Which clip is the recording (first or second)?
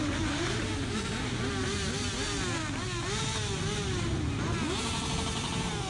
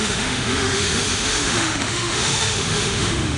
first